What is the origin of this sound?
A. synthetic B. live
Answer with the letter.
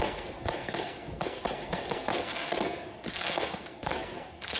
A